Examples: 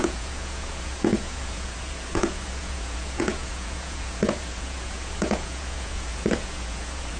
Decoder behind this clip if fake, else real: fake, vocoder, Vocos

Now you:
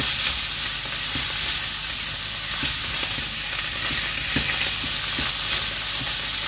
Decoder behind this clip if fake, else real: real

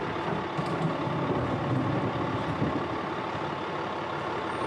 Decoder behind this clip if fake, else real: real